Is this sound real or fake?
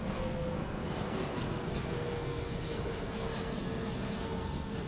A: fake